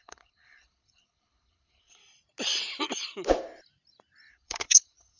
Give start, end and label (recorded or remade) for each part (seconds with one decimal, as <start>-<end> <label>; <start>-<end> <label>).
0.0-2.0 remade; 2.0-4.3 recorded; 4.3-5.2 remade